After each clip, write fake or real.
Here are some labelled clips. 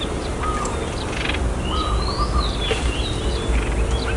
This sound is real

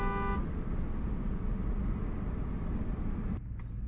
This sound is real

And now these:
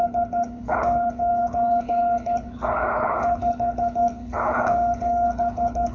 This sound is fake